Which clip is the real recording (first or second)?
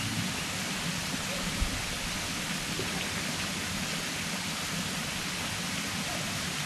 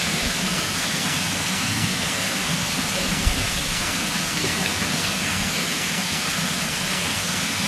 first